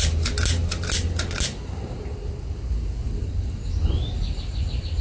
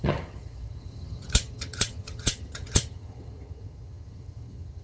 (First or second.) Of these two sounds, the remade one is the second